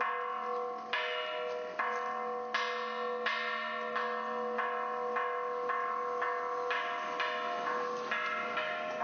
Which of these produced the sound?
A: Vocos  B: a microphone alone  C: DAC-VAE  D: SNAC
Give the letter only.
B